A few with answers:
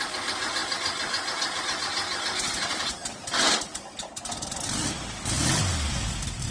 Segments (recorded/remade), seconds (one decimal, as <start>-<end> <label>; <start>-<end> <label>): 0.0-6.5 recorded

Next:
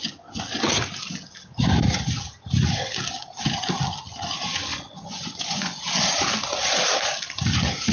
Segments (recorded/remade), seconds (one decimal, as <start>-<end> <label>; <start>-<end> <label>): 0.0-4.7 recorded; 4.7-5.8 remade; 5.8-7.9 recorded

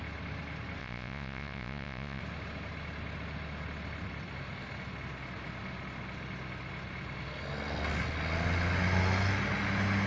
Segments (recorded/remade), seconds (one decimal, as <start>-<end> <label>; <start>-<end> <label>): 0.0-0.8 recorded; 0.8-2.2 remade; 2.2-10.1 recorded

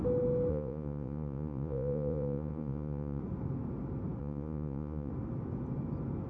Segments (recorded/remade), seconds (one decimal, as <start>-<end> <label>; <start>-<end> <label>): 0.0-0.5 recorded; 0.5-3.2 remade; 3.2-4.2 recorded; 4.2-5.1 remade; 5.1-6.3 recorded